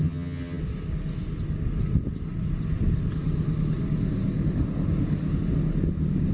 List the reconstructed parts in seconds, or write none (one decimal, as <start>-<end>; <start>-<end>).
0.0-0.6